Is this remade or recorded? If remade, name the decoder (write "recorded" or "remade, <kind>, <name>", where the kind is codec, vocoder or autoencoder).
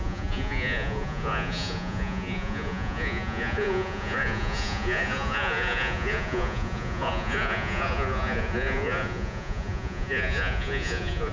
remade, vocoder, Vocos